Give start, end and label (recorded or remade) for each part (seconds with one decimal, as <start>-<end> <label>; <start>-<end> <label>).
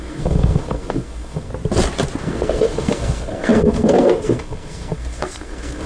0.0-1.5 remade; 1.5-2.2 recorded; 2.2-5.9 remade